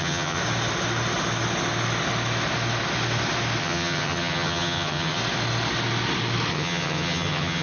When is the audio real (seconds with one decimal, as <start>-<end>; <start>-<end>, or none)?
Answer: 0.4-3.6; 5.2-6.5